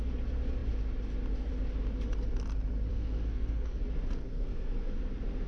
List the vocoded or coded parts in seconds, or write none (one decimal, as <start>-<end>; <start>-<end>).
2.9-3.8; 4.3-5.0